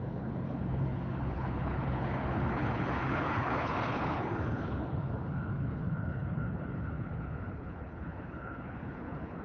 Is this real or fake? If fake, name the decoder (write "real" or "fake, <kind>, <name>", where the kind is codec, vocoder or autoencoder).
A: fake, codec, HILCodec